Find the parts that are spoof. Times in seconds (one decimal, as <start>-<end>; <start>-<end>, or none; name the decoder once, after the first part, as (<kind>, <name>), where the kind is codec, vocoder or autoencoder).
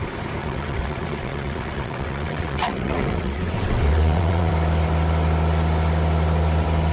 0.4-4.5 (vocoder, WaveNeXt)